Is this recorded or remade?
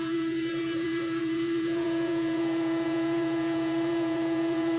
remade